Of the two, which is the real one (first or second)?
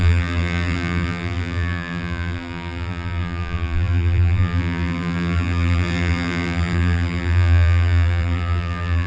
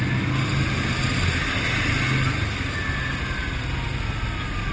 second